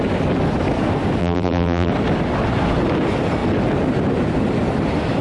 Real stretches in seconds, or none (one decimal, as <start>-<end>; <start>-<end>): 0.0-1.2; 1.9-5.2